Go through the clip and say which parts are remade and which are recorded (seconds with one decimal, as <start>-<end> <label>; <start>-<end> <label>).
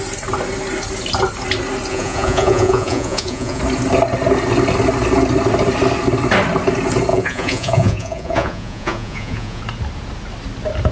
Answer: 0.0-1.9 recorded; 1.9-3.6 remade; 3.6-7.1 recorded; 7.1-9.6 remade; 9.6-10.9 recorded